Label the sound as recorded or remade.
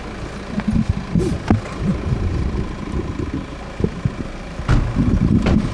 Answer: recorded